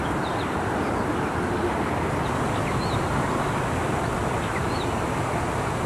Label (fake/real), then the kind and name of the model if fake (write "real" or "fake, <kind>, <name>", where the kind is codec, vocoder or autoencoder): real